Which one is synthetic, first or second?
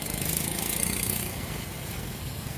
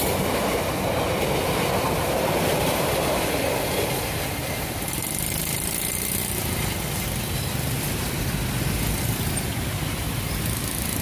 first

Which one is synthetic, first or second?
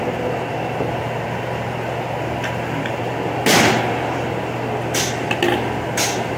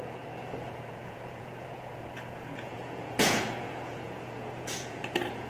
second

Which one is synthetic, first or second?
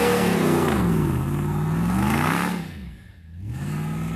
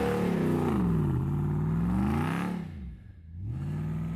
first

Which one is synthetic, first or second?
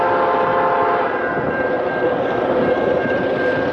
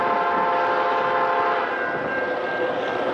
first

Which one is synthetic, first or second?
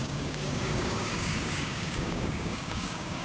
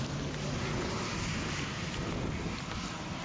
first